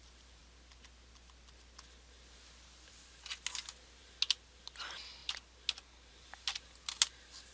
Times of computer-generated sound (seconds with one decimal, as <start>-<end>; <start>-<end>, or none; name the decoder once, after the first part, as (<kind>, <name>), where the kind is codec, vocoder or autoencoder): none